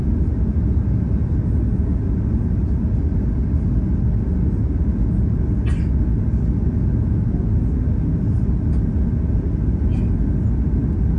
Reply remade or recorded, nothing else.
recorded